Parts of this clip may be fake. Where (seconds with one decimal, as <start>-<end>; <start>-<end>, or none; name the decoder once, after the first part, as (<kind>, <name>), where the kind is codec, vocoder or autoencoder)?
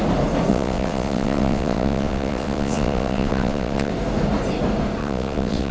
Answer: 0.5-3.9 (vocoder, WaveNeXt); 5.0-5.7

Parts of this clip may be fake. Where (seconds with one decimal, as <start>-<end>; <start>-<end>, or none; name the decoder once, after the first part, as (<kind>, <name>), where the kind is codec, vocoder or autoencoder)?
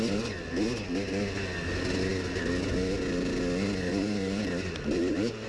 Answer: none